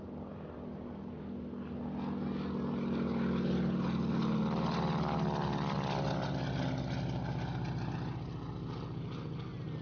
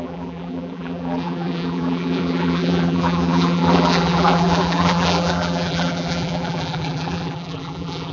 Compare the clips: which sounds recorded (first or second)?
first